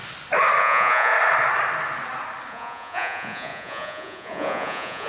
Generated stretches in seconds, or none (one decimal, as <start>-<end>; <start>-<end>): 0.6-1.1; 2.5-5.1